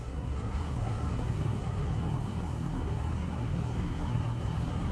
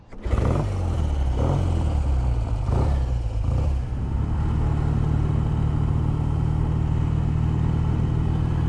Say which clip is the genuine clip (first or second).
second